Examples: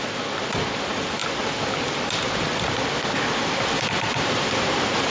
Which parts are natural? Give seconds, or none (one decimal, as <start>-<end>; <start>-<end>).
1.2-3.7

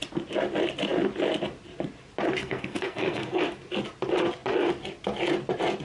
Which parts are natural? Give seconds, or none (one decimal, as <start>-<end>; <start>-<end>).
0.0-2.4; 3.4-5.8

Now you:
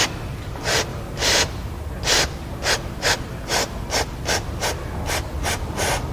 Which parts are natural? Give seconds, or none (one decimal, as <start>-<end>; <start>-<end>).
0.0-0.9; 1.7-6.1

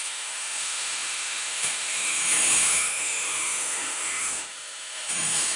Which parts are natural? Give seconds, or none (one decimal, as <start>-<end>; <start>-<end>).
none

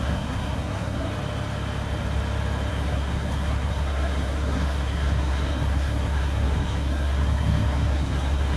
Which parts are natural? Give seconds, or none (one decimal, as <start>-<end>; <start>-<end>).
1.1-2.7

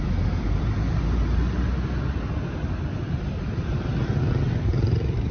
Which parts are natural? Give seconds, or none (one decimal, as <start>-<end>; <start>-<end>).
1.4-4.6

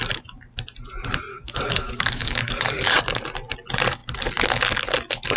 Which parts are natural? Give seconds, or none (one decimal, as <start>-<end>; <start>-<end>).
0.0-1.3; 3.0-5.4

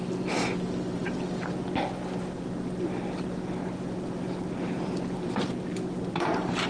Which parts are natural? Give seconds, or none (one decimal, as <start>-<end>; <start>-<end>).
0.0-4.6; 5.3-6.7